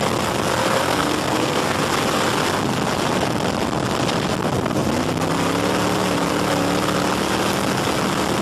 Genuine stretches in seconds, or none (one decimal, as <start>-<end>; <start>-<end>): 0.0-0.6; 1.8-8.4